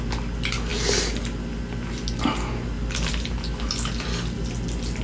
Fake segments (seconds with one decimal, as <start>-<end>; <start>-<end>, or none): none